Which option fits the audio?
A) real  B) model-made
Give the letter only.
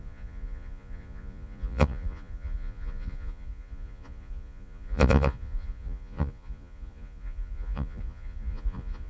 B